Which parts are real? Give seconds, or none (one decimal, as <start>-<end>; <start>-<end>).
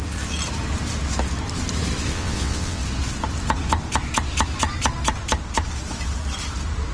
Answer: 0.0-2.1; 2.8-6.9